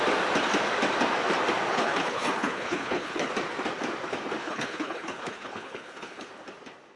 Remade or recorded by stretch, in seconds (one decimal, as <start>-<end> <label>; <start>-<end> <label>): 0.0-1.7 recorded; 1.7-3.3 remade; 3.3-4.4 recorded; 4.4-6.3 remade; 6.3-7.0 recorded